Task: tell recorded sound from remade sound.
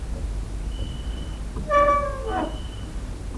remade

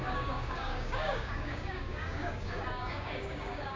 remade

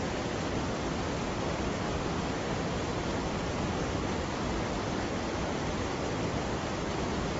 recorded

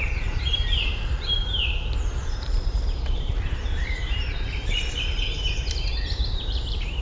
remade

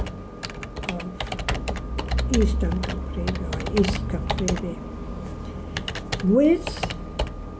recorded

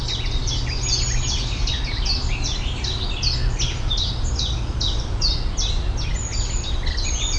recorded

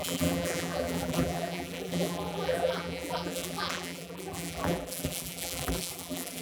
remade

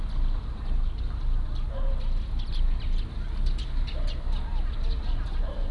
recorded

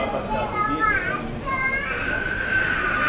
recorded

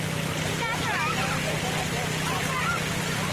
recorded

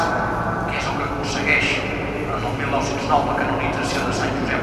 recorded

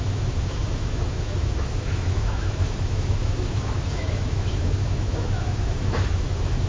remade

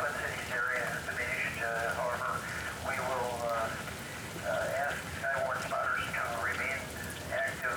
recorded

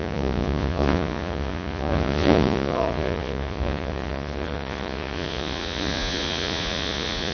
remade